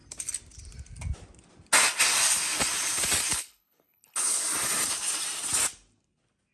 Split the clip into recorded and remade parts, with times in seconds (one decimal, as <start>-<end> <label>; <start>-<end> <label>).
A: 0.0-3.3 recorded; 3.3-4.4 remade; 4.4-6.5 recorded